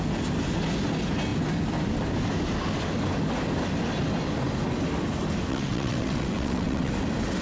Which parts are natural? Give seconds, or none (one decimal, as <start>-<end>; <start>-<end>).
0.0-5.5; 6.9-7.4